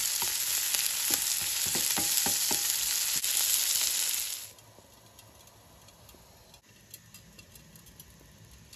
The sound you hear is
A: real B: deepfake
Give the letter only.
A